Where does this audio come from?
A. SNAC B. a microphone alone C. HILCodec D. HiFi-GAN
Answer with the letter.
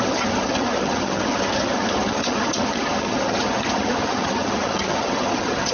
D